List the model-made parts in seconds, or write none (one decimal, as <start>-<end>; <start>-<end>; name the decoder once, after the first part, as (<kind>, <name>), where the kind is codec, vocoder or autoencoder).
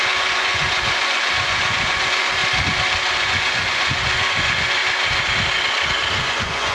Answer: 0.0-2.4 (vocoder, Vocos); 3.1-4.8; 6.1-6.7